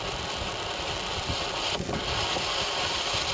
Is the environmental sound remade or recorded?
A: recorded